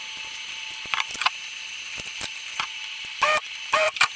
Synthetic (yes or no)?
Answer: yes